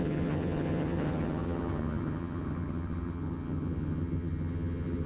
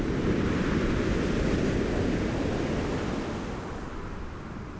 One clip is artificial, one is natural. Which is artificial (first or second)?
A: first